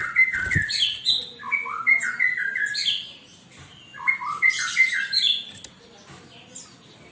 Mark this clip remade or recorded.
recorded